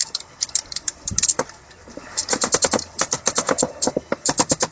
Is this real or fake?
fake